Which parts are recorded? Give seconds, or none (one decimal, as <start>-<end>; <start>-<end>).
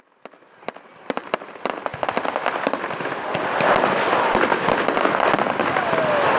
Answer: 0.0-0.9; 1.5-6.4